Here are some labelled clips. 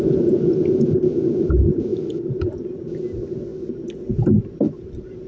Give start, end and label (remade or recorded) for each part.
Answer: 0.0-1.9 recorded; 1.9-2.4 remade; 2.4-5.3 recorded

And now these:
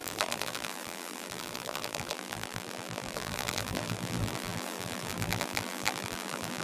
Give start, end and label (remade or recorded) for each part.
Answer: 0.0-6.6 remade

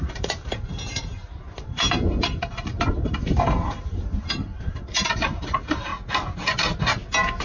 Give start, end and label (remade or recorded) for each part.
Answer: 0.0-5.9 remade; 5.9-7.4 recorded

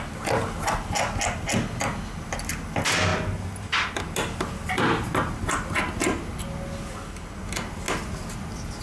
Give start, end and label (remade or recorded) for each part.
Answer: 0.0-3.1 recorded; 3.1-4.0 remade; 4.0-8.8 recorded

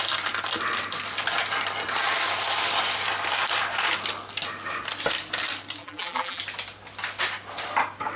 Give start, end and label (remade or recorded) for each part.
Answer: 0.0-5.8 recorded; 5.8-6.4 remade; 6.4-8.2 recorded

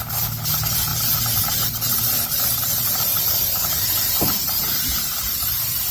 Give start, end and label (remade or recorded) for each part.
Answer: 0.0-5.9 recorded

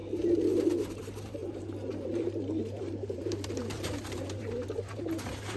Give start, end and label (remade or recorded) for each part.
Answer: 0.0-0.9 recorded; 0.9-5.6 remade

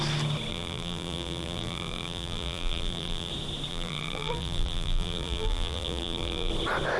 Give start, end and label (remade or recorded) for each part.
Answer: 0.0-0.5 recorded; 0.5-3.3 remade; 3.3-3.7 recorded; 3.7-6.5 remade; 6.5-7.0 recorded